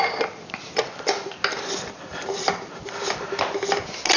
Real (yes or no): yes